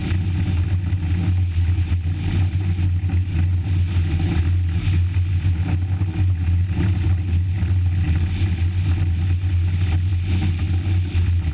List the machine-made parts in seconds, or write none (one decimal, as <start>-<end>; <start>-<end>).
none